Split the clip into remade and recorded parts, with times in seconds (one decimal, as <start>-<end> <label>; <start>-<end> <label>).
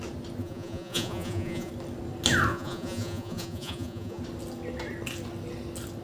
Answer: 0.0-0.4 recorded; 0.4-1.7 remade; 1.7-2.5 recorded; 2.5-4.2 remade; 4.2-6.0 recorded